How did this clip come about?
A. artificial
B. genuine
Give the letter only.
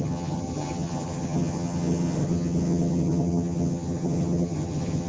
A